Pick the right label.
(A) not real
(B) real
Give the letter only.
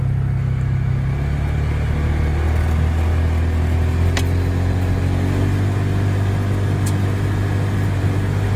B